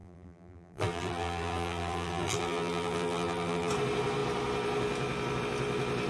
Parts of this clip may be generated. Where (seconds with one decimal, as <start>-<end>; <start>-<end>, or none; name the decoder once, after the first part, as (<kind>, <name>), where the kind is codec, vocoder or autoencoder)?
0.0-3.7 (vocoder, BigVGAN v2)